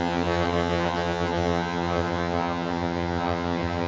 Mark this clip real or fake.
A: fake